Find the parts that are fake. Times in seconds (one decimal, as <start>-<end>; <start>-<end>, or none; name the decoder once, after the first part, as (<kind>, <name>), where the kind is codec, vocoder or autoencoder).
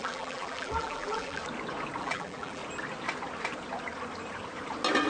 0.0-1.4 (vocoder, BigVGAN v2); 2.0-2.6